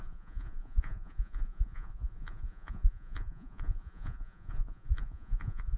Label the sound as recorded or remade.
remade